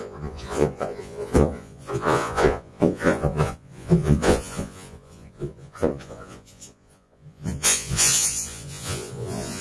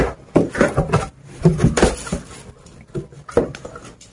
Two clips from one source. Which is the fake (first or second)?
first